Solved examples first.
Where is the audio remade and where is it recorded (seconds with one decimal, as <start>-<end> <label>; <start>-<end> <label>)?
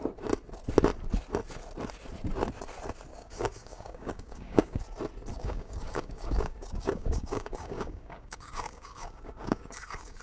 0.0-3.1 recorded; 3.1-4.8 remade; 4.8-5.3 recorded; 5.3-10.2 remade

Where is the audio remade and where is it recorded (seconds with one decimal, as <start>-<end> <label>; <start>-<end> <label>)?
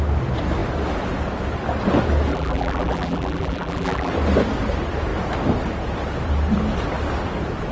0.0-2.3 recorded; 2.3-4.1 remade; 4.1-7.7 recorded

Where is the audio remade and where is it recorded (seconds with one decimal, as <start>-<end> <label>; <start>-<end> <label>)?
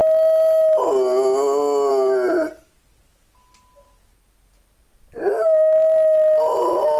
0.0-7.0 recorded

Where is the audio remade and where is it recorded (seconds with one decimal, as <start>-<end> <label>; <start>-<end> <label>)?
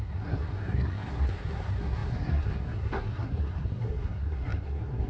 0.0-5.1 remade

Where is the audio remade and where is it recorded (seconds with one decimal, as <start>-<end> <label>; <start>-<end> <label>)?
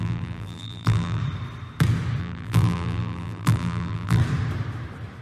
0.0-1.2 remade; 1.2-2.2 recorded; 2.2-4.2 remade; 4.2-5.2 recorded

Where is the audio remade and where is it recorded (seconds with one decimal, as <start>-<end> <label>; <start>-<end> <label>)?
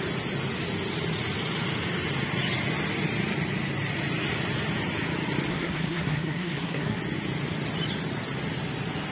0.0-5.5 recorded; 5.5-7.0 remade; 7.0-9.1 recorded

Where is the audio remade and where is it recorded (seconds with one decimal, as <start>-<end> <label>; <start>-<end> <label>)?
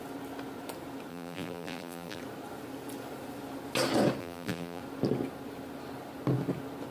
0.0-1.1 recorded; 1.1-2.2 remade; 2.2-4.2 recorded; 4.2-4.8 remade; 4.8-6.9 recorded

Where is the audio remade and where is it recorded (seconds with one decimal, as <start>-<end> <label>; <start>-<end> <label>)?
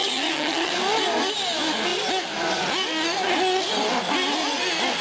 0.0-0.7 remade; 0.7-5.0 recorded